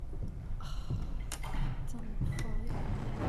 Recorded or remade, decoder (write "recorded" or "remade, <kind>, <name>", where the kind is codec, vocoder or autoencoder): remade, vocoder, BigVGAN v2